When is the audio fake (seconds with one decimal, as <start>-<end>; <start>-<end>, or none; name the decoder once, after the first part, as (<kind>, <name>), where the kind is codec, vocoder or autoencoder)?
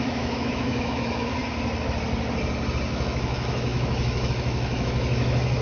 0.0-1.4 (autoencoder, DAC-VAE); 2.9-5.6